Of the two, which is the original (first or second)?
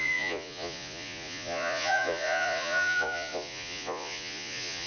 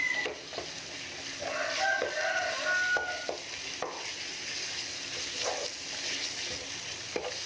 second